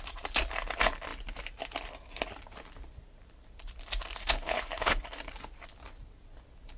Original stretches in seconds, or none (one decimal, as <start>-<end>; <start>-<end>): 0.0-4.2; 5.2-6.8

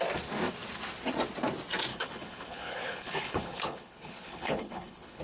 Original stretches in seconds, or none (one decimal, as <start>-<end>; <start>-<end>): 0.0-1.9

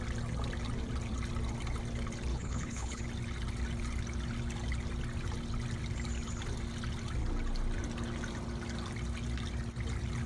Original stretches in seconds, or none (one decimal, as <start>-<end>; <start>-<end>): 0.0-2.3; 3.0-10.3